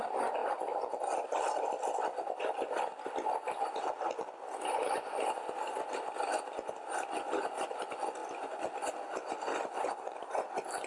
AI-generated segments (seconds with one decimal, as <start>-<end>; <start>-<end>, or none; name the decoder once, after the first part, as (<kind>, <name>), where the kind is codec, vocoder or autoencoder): none